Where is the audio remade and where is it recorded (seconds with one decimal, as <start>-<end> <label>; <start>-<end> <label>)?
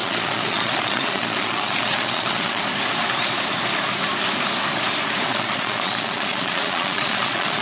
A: 0.0-2.6 remade; 2.6-5.3 recorded; 5.3-7.6 remade